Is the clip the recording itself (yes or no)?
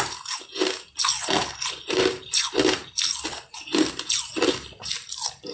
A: yes